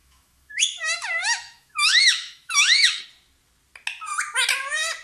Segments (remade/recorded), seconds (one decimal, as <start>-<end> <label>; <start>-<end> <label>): 0.0-3.0 remade; 3.0-5.0 recorded